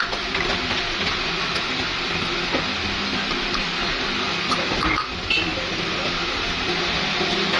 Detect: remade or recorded recorded